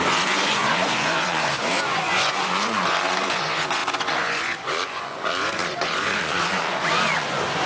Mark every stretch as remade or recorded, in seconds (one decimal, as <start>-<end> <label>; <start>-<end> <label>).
0.0-7.7 remade